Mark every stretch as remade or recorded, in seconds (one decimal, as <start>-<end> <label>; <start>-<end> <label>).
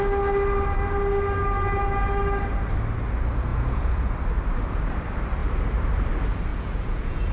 0.0-3.5 recorded; 3.5-4.1 remade; 4.1-6.5 recorded; 6.5-7.3 remade